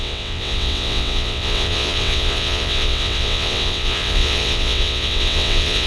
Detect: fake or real fake